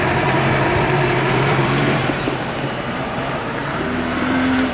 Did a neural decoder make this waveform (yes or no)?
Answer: yes